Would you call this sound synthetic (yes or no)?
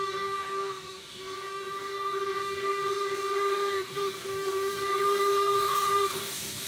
yes